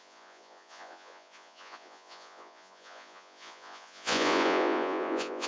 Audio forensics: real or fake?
fake